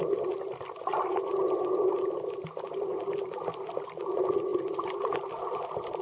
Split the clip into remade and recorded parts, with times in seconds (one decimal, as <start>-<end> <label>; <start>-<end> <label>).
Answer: 0.0-6.0 recorded

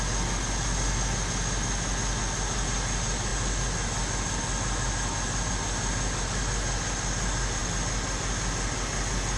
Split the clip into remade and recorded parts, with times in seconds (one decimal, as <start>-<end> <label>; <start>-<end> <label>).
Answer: 0.0-9.4 recorded

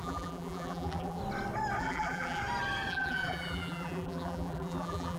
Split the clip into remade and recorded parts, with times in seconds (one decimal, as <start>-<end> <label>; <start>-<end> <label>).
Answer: 0.0-1.2 remade; 1.2-1.8 recorded; 1.8-2.4 remade; 2.4-2.9 recorded; 2.9-5.2 remade

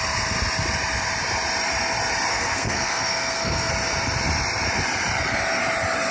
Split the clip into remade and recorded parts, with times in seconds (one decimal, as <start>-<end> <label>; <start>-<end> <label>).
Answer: 0.0-2.3 recorded; 2.3-3.7 remade; 3.7-6.1 recorded

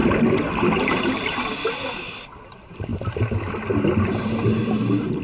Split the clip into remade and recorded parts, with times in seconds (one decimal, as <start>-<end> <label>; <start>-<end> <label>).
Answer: 0.0-5.2 recorded